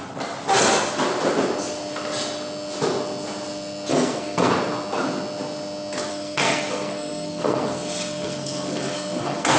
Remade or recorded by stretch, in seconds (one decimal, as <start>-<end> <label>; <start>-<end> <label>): 0.0-3.9 recorded; 3.9-4.5 remade; 4.5-6.1 recorded; 6.1-9.6 remade